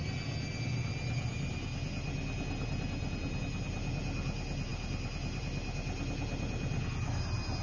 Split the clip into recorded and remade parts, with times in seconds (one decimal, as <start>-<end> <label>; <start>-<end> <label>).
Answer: 0.0-7.6 recorded